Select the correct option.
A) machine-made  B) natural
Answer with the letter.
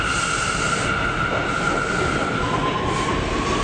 B